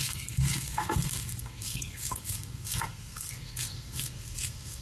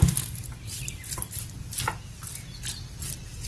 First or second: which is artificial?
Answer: first